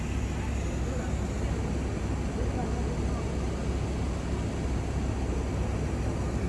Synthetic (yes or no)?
no